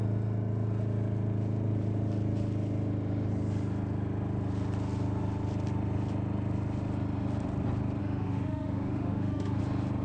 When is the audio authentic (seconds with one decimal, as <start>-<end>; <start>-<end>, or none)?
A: 0.0-8.0; 9.6-10.0